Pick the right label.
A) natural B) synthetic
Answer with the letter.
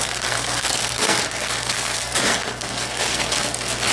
B